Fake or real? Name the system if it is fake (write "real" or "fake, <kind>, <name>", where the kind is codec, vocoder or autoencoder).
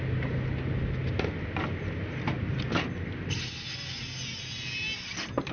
real